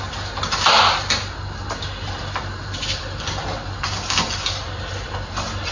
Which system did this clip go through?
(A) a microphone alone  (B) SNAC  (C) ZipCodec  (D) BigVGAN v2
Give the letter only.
A